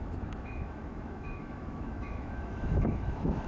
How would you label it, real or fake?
fake